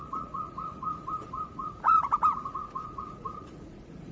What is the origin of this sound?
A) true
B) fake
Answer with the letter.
B